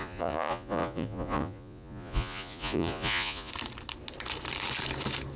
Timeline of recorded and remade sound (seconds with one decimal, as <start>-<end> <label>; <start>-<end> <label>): 0.0-3.5 remade; 3.5-5.4 recorded